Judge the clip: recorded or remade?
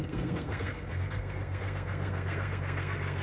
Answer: remade